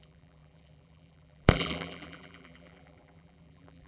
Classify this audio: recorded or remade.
remade